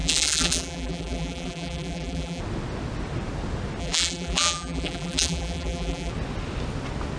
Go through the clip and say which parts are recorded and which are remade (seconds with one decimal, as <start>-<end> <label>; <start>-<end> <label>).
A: 0.0-2.4 remade; 2.4-3.8 recorded; 3.8-6.1 remade; 6.1-7.2 recorded